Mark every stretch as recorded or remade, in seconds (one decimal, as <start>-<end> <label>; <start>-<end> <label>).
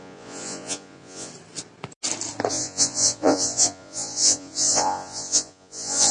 0.0-1.3 remade; 1.3-2.5 recorded; 2.5-6.1 remade